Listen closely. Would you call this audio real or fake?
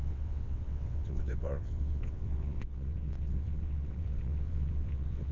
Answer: fake